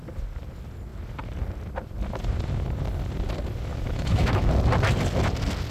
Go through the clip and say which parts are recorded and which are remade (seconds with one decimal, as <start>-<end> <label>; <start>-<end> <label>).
0.0-3.7 recorded; 3.7-4.5 remade; 4.5-5.7 recorded